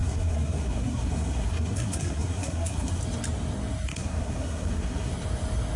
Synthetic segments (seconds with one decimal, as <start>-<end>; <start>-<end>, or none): 0.0-3.0; 3.9-5.1